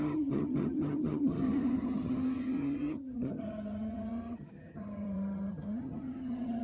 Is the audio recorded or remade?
remade